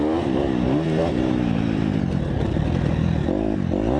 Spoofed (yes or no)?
no